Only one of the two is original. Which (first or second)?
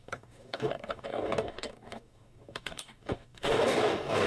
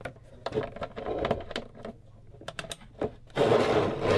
second